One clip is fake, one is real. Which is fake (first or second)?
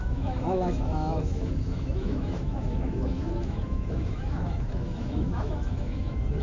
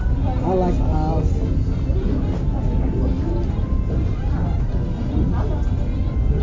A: first